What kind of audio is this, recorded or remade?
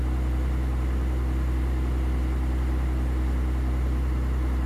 recorded